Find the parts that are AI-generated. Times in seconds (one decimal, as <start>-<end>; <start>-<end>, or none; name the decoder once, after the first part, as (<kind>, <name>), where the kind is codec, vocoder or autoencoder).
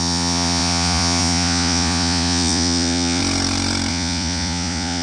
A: 0.0-3.2 (vocoder, Vocos); 3.9-5.0